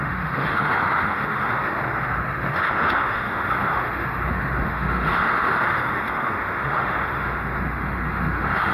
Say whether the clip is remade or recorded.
remade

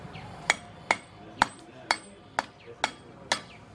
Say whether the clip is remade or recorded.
recorded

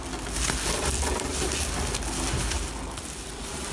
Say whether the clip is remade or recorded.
recorded